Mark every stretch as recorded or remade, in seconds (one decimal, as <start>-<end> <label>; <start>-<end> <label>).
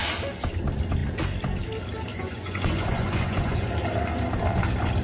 0.0-2.1 recorded; 2.1-3.7 remade; 3.7-5.0 recorded